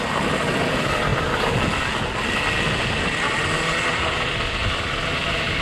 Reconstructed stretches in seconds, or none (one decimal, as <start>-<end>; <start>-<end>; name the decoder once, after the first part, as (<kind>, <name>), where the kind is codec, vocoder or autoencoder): none